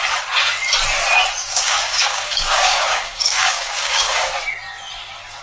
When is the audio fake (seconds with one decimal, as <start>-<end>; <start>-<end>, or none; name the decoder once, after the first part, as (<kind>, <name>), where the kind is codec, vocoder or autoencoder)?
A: 1.4-4.3 (codec, DAC)